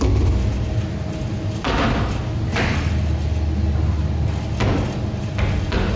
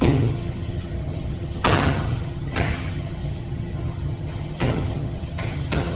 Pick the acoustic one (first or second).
first